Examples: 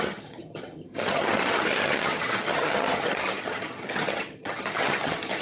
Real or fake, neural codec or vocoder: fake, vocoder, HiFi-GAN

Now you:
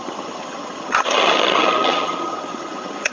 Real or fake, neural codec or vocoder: fake, vocoder, HiFi-GAN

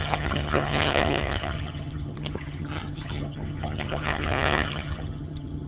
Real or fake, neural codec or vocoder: fake, vocoder, HiFi-GAN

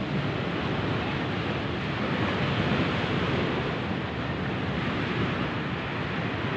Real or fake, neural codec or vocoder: real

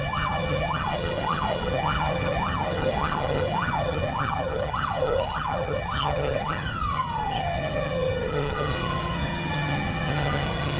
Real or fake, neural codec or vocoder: fake, vocoder, HiFi-GAN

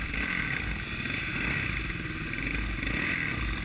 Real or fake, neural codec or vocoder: real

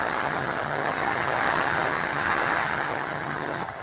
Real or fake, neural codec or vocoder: fake, vocoder, HiFi-GAN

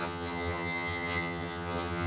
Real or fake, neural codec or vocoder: fake, vocoder, HiFi-GAN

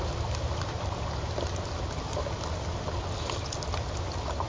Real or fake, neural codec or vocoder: real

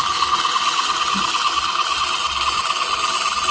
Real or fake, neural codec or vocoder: real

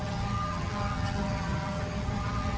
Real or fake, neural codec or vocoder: fake, vocoder, HiFi-GAN